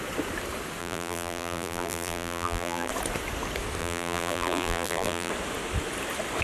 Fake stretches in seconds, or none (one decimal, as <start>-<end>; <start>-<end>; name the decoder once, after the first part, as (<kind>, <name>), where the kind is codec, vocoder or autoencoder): 0.8-2.9 (vocoder, BigVGAN v2); 3.8-5.3